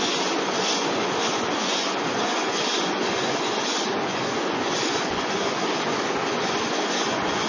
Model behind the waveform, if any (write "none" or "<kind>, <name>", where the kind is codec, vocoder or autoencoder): vocoder, Vocos